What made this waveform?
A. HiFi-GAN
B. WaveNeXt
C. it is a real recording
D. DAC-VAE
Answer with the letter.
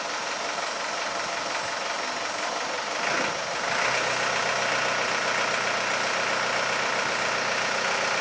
C